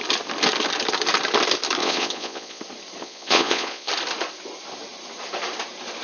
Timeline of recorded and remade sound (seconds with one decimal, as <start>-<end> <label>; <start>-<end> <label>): 0.0-1.8 recorded; 1.8-2.6 remade; 2.6-3.0 recorded; 3.0-3.9 remade; 3.9-6.0 recorded